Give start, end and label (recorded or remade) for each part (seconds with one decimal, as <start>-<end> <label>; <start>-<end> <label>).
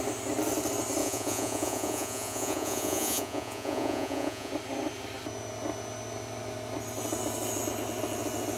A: 0.0-1.0 recorded; 1.0-4.5 remade; 4.5-8.6 recorded